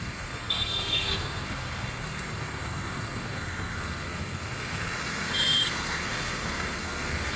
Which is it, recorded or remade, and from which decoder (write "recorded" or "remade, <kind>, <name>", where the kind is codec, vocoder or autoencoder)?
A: remade, codec, SNAC